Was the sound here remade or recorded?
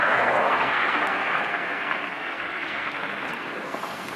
remade